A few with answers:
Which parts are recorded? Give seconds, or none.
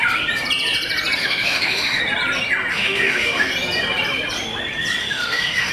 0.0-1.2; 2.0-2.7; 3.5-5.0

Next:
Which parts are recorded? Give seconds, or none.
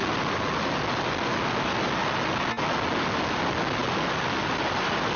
0.0-5.2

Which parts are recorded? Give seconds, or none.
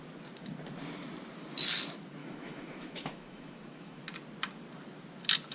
0.0-2.2; 4.0-5.5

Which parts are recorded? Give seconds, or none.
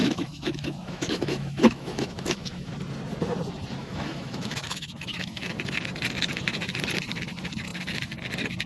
2.7-3.8; 5.5-8.7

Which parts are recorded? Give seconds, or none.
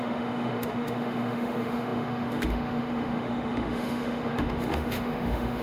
none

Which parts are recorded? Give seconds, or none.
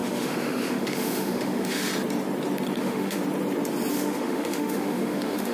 1.9-2.8; 3.2-3.9